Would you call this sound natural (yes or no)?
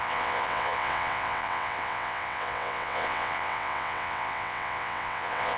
no